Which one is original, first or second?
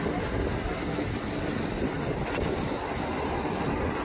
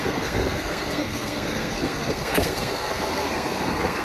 first